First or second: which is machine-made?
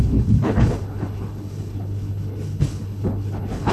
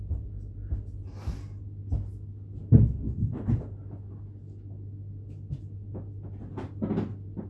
first